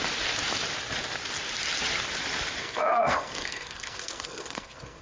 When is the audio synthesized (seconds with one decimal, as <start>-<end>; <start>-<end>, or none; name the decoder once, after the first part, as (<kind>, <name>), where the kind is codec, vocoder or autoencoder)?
2.6-5.0 (codec, SNAC)